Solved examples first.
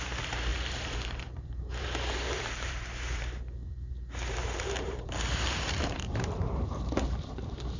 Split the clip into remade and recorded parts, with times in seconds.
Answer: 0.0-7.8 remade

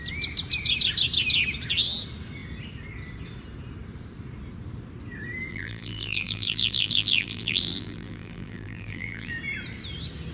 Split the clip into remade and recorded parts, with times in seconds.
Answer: 0.0-5.5 recorded; 5.5-9.3 remade; 9.3-10.3 recorded

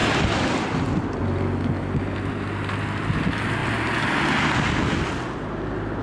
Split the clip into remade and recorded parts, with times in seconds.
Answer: 0.0-1.2 remade; 1.2-6.0 recorded